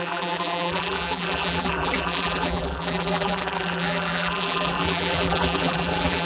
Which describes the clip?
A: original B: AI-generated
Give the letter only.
B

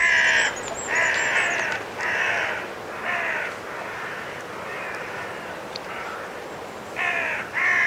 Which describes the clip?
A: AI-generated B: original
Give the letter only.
A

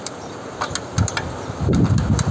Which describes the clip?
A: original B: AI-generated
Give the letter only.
A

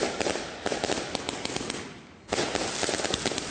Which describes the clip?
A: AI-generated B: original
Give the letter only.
B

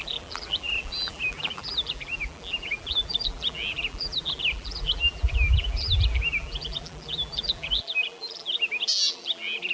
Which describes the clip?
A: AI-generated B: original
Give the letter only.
A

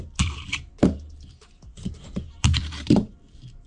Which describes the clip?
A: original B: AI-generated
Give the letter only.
B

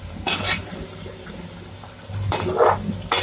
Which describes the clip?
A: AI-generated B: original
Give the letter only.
B